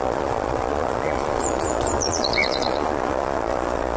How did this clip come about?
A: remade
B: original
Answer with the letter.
A